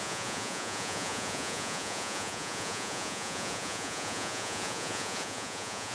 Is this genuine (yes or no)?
no